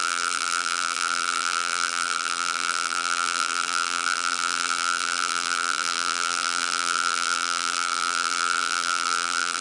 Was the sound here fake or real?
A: fake